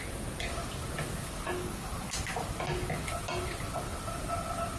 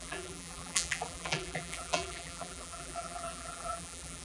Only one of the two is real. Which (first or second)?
first